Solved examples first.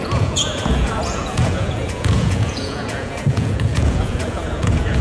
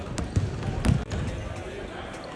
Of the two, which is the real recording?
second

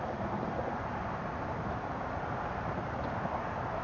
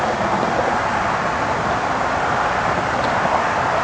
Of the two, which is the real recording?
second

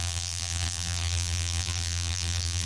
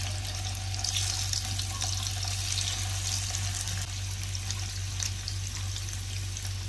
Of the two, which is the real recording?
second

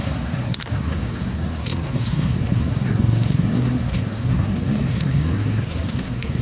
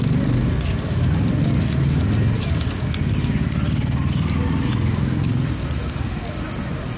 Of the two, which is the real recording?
second